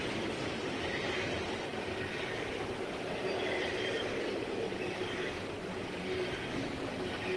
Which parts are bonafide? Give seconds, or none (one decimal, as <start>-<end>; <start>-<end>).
0.0-7.4

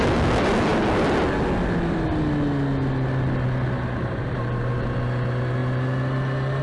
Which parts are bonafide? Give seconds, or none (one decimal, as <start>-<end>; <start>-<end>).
0.0-6.6

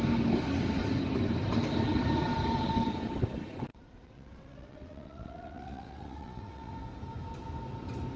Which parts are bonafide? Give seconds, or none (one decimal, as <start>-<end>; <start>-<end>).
0.0-3.7; 6.7-8.2

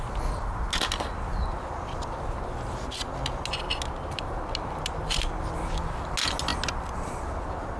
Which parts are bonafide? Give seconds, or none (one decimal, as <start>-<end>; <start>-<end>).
0.0-7.8

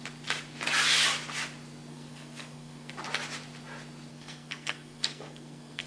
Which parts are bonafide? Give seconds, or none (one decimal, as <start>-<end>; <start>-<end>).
0.0-1.9; 2.9-4.1

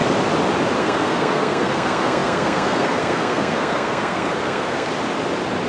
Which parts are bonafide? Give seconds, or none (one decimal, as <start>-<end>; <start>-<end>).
0.0-0.8; 4.9-5.7